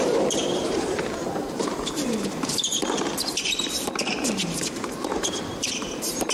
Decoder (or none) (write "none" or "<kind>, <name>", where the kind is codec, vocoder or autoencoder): vocoder, BigVGAN v2